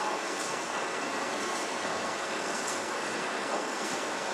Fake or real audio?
fake